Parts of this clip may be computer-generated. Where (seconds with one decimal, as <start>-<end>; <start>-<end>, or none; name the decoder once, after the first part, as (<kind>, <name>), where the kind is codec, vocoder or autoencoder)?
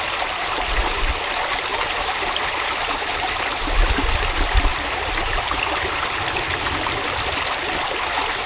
1.7-3.1 (vocoder, BigVGAN v2)